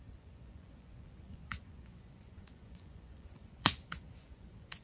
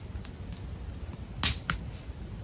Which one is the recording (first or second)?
second